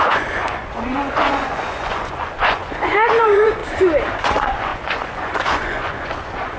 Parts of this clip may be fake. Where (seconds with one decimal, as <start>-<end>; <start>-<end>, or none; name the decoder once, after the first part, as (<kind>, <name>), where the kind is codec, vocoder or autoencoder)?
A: 0.0-3.6 (vocoder, Vocos); 4.2-6.6